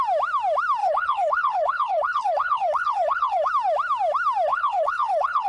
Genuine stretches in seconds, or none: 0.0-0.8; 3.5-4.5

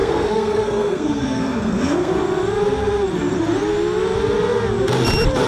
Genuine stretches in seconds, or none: 2.1-5.5

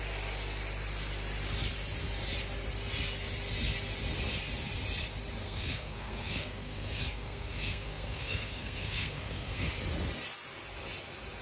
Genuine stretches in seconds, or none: 0.0-5.4; 9.7-11.4

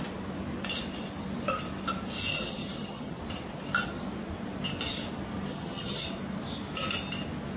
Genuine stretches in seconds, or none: 0.0-2.3; 3.2-5.5; 6.0-7.6